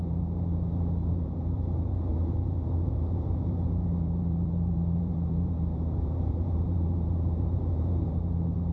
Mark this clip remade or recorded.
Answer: remade